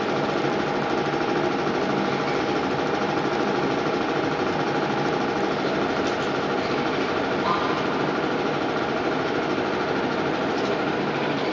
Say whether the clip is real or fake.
real